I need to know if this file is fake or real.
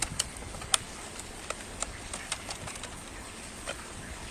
real